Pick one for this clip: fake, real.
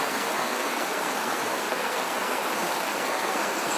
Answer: fake